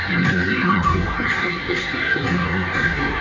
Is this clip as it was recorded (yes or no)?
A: no